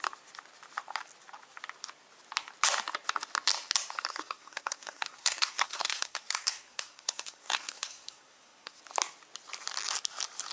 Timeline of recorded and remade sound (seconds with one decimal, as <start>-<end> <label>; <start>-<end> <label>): 0.0-4.1 recorded; 4.1-8.8 remade; 8.8-10.5 recorded